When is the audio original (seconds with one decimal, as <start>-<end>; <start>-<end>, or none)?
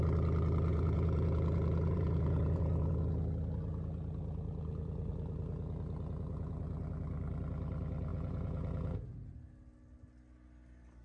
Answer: 0.0-0.7; 2.9-8.1; 9.1-11.0